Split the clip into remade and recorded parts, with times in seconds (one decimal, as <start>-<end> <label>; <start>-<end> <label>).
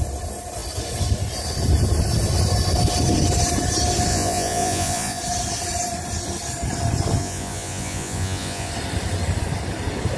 0.0-4.1 recorded; 4.1-5.2 remade; 5.2-7.2 recorded; 7.2-8.7 remade; 8.7-10.2 recorded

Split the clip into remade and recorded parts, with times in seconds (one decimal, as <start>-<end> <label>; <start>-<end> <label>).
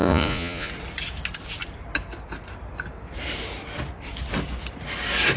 0.0-0.7 remade; 0.7-5.4 recorded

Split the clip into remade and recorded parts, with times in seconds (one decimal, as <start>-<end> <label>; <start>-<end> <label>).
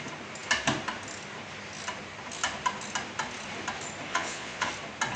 0.0-4.1 recorded; 4.1-4.7 remade; 4.7-5.2 recorded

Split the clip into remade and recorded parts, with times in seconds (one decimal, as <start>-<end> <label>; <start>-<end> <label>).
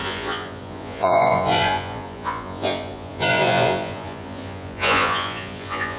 0.0-6.0 remade